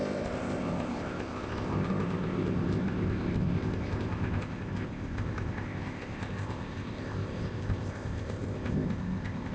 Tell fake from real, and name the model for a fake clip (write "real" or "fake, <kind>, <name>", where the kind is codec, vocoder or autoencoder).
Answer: fake, codec, ZipCodec